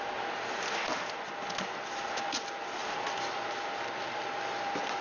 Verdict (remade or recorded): recorded